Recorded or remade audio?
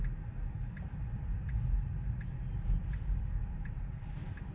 recorded